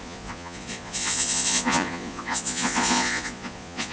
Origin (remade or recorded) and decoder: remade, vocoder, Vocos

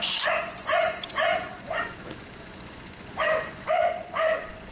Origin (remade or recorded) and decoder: remade, vocoder, Vocos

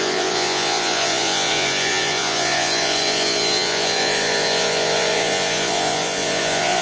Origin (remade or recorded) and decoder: remade, vocoder, Vocos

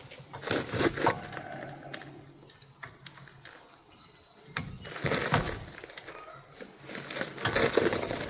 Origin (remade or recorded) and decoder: recorded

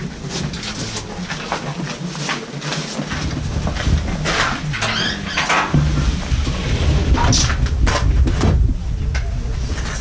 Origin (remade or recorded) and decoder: recorded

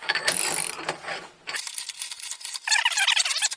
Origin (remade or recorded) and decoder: recorded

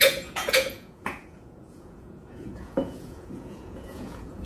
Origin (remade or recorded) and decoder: remade, vocoder, Vocos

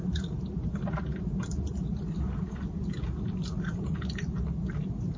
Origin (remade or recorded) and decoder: recorded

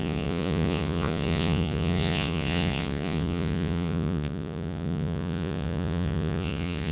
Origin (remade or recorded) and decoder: remade, vocoder, Vocos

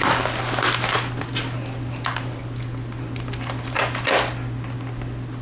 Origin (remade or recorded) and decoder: recorded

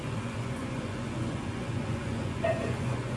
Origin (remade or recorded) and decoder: remade, vocoder, Vocos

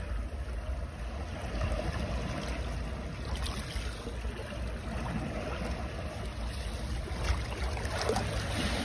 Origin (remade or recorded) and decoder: recorded